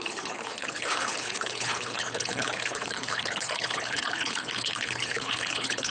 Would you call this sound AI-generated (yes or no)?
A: yes